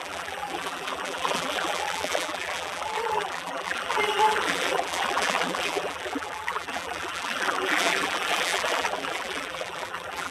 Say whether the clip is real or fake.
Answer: fake